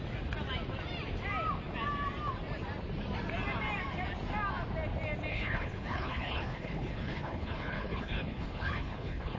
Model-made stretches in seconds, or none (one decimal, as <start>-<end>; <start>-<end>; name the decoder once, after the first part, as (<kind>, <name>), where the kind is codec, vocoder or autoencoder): 5.3-9.4 (codec, HILCodec)